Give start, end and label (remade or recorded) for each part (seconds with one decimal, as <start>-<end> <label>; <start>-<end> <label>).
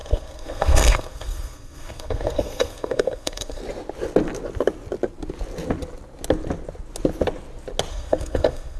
0.0-3.6 remade; 3.6-7.9 recorded; 7.9-8.8 remade